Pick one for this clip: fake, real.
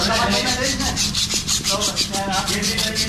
fake